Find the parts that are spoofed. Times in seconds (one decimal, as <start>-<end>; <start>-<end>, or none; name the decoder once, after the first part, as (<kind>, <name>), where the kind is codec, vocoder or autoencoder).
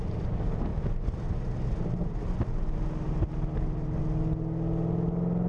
none